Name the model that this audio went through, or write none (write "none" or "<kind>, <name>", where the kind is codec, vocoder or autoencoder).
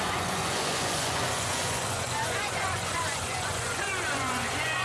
vocoder, Vocos